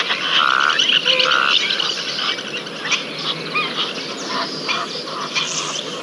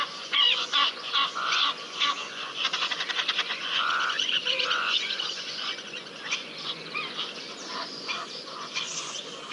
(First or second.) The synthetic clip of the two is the second